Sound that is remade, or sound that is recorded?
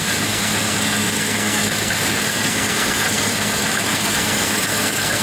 remade